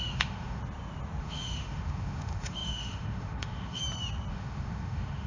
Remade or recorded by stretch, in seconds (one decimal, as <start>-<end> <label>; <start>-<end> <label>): 0.0-0.6 remade; 0.6-1.2 recorded; 1.2-3.8 remade; 3.8-4.3 recorded; 4.3-5.3 remade